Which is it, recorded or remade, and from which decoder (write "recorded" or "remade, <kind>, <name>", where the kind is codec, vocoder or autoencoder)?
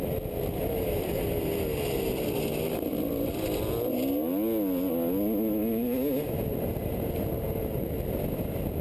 recorded